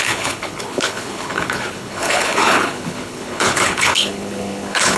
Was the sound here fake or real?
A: fake